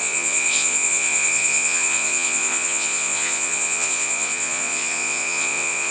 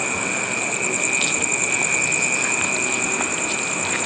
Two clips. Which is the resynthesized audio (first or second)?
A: first